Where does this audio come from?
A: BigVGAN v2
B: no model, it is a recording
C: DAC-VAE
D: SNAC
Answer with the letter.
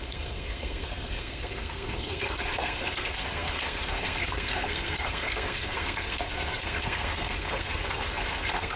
D